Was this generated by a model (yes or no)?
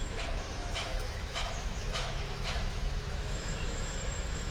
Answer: yes